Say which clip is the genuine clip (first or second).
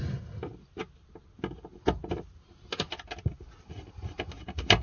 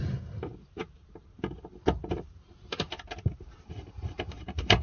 first